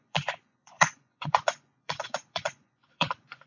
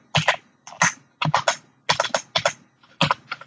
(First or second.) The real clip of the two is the second